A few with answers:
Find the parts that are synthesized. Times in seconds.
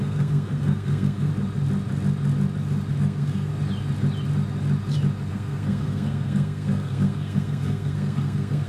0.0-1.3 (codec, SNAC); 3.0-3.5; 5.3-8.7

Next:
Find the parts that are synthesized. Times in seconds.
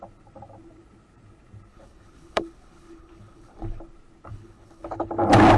1.7-3.8 (codec, HILCodec); 4.3-5.1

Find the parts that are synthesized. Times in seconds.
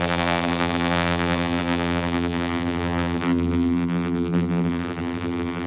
0.0-5.7 (vocoder, BigVGAN v2)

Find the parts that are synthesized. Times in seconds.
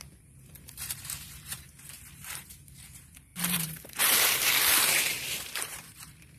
0.0-6.4 (vocoder, BigVGAN v2)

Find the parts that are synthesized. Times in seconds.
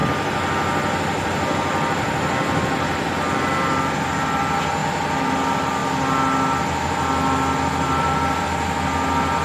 none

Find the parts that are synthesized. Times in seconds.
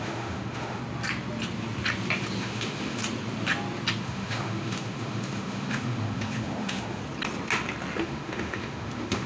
0.0-0.8 (autoencoder, DAC-VAE); 2.4-3.0; 4.0-7.0; 8.0-9.3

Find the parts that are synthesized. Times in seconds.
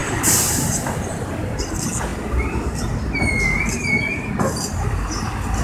0.0-1.5 (vocoder, BigVGAN v2)